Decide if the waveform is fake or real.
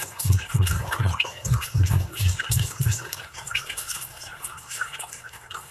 fake